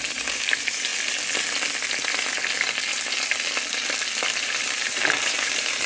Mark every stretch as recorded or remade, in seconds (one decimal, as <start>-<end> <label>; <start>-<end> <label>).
0.0-0.9 remade; 0.9-4.4 recorded; 4.4-5.9 remade